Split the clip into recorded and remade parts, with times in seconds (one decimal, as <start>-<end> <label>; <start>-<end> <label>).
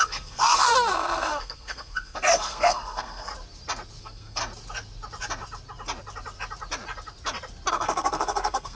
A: 0.0-3.3 remade; 3.3-4.0 recorded; 4.0-4.4 remade; 4.4-7.7 recorded; 7.7-8.7 remade